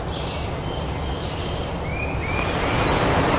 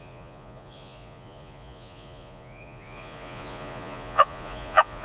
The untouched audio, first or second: first